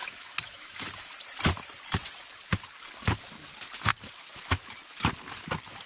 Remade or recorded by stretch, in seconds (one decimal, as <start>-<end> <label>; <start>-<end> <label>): 0.0-1.1 remade; 1.1-5.9 recorded